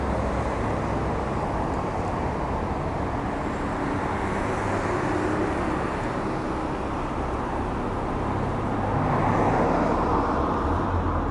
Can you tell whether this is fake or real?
real